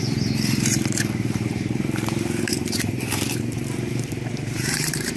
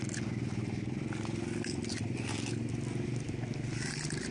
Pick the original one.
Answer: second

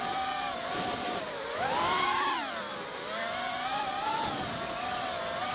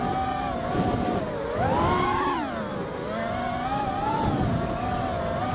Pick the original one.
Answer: second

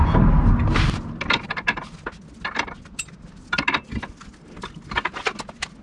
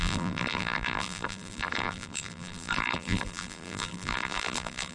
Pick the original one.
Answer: first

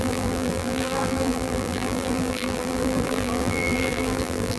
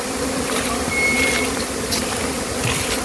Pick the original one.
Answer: second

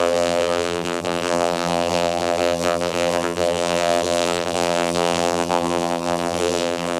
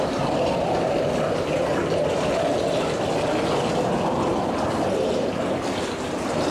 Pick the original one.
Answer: second